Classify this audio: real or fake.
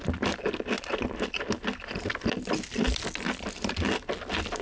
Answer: real